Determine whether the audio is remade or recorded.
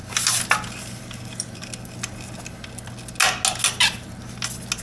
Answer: recorded